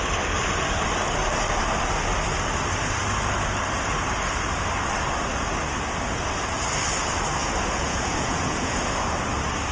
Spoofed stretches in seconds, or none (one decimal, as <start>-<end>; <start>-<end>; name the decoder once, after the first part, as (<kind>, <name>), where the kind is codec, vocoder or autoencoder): 7.4-8.8 (vocoder, Vocos)